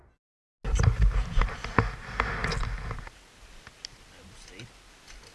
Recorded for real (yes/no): yes